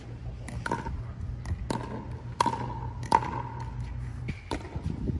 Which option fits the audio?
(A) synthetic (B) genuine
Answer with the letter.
B